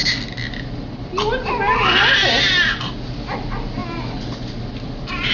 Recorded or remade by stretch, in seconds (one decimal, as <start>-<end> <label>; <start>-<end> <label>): 0.0-5.3 recorded